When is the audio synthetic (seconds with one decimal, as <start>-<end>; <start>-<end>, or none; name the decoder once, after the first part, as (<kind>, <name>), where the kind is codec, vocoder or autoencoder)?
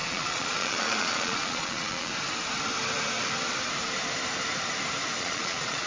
0.0-2.1 (vocoder, Vocos); 5.2-5.9